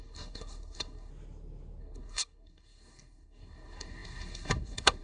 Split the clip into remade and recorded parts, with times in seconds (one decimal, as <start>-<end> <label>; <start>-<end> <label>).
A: 0.0-1.1 remade; 1.1-1.8 recorded; 1.8-5.0 remade